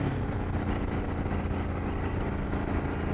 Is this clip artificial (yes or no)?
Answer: no